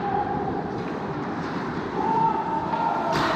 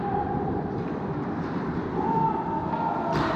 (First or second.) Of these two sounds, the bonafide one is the second